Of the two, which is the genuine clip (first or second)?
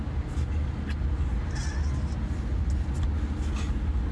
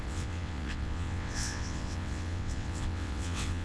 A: first